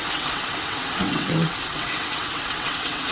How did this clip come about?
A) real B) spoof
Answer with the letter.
B